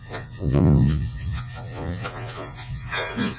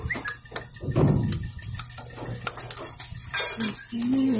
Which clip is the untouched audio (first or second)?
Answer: second